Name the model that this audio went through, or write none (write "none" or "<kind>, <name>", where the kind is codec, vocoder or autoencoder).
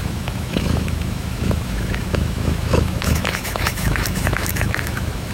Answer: autoencoder, DAC-VAE